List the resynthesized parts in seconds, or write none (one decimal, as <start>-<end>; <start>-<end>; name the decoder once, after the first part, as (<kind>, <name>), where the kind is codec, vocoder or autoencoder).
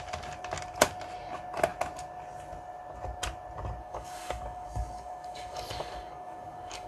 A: 3.8-6.9 (codec, DAC)